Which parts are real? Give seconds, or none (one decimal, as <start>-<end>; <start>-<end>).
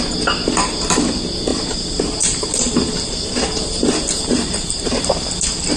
0.0-1.5; 5.0-5.8